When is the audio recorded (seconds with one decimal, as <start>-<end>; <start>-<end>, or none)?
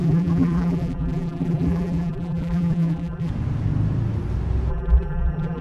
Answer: 3.3-4.7